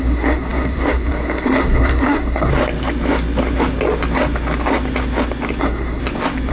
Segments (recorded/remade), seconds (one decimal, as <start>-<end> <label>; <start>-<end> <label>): 0.0-2.5 remade; 2.5-5.6 recorded; 5.6-6.0 remade; 6.0-6.5 recorded